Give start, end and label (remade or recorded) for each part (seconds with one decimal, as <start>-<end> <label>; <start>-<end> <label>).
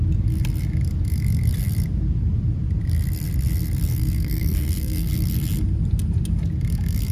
0.0-3.9 recorded; 3.9-5.1 remade; 5.1-7.1 recorded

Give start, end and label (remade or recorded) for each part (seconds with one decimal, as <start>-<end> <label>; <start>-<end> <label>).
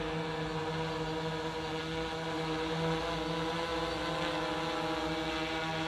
0.0-5.9 recorded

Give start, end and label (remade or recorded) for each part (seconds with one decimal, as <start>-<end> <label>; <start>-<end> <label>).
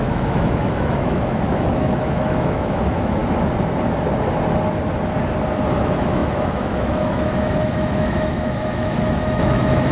0.0-3.2 remade; 3.2-5.8 recorded; 5.8-9.9 remade